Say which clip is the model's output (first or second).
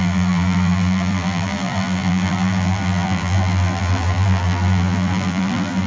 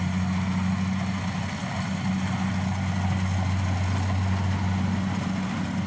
first